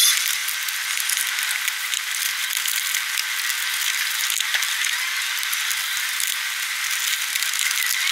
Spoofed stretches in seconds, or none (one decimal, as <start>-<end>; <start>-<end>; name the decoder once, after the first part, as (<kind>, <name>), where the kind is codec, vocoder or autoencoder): none